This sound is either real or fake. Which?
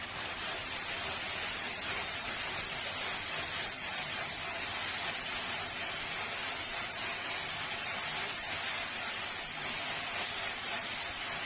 real